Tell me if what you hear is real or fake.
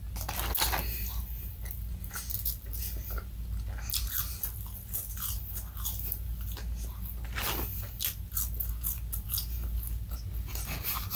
real